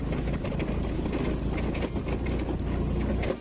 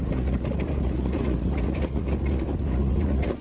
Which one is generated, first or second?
second